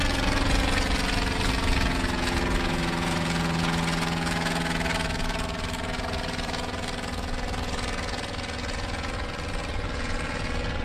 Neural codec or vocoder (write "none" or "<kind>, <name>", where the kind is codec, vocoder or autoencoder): vocoder, Vocos